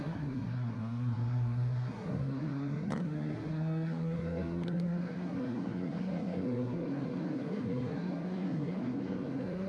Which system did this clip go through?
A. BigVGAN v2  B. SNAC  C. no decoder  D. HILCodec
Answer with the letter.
B